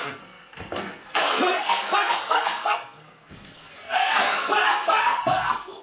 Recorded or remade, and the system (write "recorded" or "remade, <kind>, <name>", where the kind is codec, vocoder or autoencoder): remade, codec, SNAC